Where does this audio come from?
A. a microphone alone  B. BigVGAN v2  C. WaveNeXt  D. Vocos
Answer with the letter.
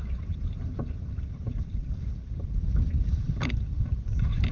B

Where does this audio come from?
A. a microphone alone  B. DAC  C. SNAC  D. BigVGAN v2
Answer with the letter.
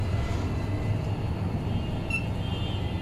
A